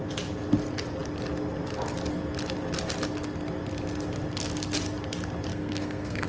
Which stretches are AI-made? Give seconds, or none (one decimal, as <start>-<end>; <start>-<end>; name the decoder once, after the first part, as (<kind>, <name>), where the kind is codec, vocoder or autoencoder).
5.5-6.3 (codec, SNAC)